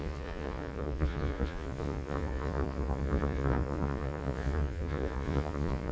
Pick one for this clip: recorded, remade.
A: remade